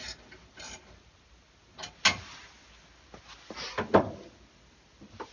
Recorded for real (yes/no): yes